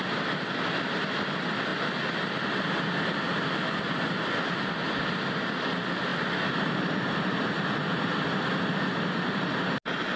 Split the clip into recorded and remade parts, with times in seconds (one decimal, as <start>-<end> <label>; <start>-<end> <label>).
0.0-10.2 recorded